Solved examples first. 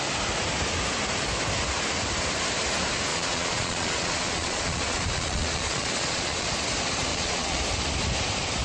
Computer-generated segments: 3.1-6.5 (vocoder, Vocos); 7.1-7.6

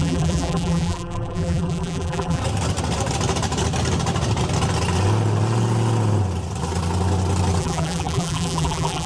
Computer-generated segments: 0.0-2.4 (vocoder, BigVGAN v2); 7.6-9.1

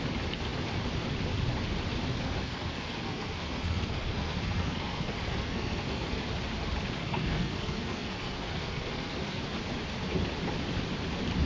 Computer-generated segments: 2.2-6.2 (codec, SNAC); 7.0-9.4

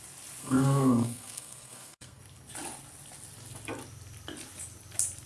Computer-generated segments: 0.4-2.2 (codec, SNAC)

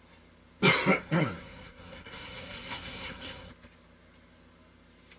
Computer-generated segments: 1.0-3.5 (codec, SNAC)

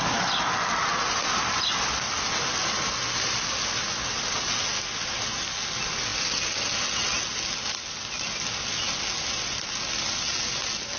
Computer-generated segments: none

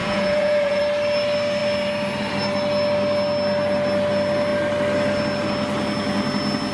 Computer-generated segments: 0.0-0.8 (vocoder, Vocos)